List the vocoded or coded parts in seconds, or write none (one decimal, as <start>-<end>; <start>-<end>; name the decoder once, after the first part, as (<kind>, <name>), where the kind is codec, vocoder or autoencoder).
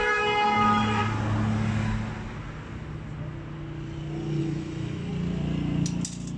0.0-1.0 (autoencoder, DAC-VAE); 4.4-5.1